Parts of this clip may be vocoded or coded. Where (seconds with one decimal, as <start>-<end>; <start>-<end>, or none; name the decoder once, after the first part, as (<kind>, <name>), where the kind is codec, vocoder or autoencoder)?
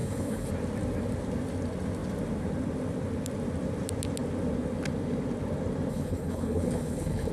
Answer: 0.0-0.5 (codec, HILCodec); 5.9-7.3